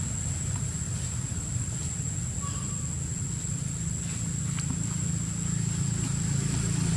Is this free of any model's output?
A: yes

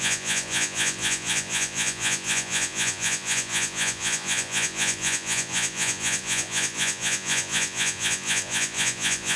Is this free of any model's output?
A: no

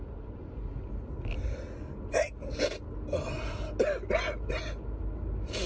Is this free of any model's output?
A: yes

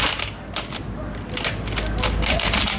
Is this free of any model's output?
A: no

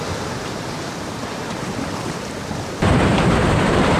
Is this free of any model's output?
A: no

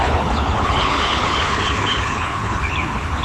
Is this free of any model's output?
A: no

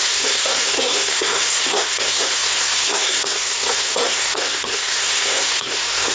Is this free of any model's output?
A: no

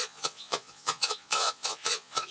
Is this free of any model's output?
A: no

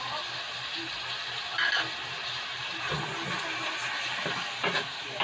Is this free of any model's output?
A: yes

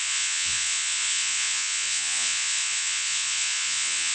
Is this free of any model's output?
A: no